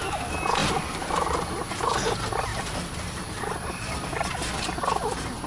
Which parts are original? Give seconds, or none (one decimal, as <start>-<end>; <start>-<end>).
0.0-0.6; 1.5-2.5; 3.4-5.5